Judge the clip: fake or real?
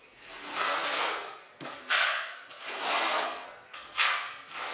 fake